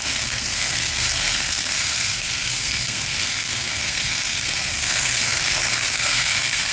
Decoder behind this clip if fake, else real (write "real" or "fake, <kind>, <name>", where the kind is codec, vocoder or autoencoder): fake, codec, SNAC